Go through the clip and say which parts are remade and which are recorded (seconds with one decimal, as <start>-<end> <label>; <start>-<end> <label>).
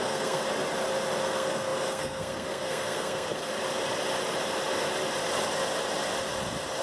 0.0-0.4 remade; 0.4-1.2 recorded; 1.2-3.5 remade; 3.5-6.8 recorded